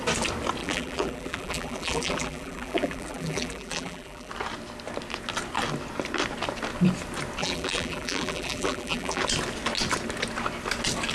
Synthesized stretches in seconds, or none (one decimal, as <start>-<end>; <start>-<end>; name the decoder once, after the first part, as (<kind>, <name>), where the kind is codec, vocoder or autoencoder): 0.6-4.3 (vocoder, BigVGAN v2); 7.4-9.2